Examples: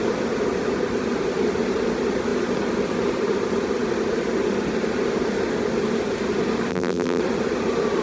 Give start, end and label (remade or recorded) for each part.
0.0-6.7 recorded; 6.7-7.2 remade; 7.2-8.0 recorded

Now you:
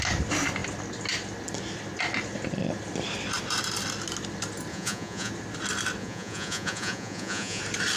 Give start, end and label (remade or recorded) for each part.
0.0-4.7 recorded; 4.7-5.3 remade; 5.3-6.0 recorded; 6.0-7.6 remade; 7.6-8.0 recorded

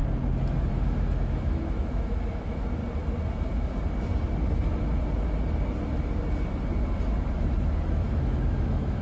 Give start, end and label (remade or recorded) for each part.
0.0-0.7 recorded; 0.7-2.8 remade; 2.8-7.9 recorded; 7.9-9.0 remade

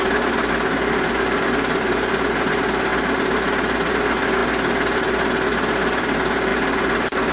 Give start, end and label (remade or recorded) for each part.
0.0-7.3 recorded

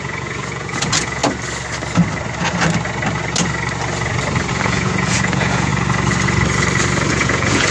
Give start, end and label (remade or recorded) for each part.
0.0-1.2 remade; 1.2-4.5 recorded; 4.5-5.7 remade; 5.7-7.1 recorded; 7.1-7.7 remade

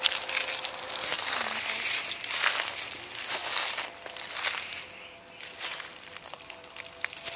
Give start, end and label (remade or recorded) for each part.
0.0-7.4 recorded

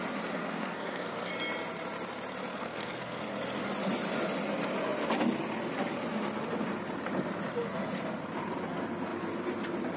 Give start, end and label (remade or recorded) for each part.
0.0-0.4 recorded; 0.4-1.3 remade; 1.3-2.5 recorded; 2.5-3.2 remade; 3.2-10.0 recorded

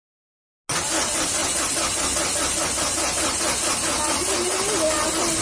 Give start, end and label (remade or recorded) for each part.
0.0-5.4 recorded